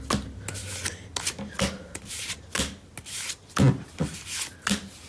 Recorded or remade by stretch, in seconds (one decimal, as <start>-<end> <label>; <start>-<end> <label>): 0.0-5.1 recorded